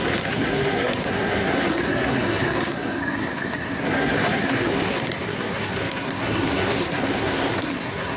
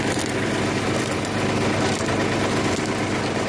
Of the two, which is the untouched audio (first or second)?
second